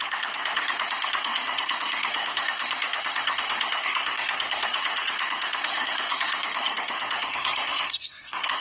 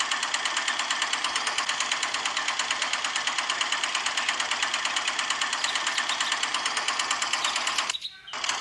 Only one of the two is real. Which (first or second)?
second